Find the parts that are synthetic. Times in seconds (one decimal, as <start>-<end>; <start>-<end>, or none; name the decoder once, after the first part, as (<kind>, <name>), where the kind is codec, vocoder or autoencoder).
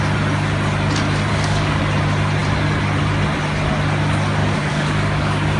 1.3-1.8 (codec, DAC); 4.4-5.6